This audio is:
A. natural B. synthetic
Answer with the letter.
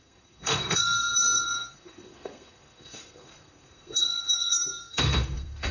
B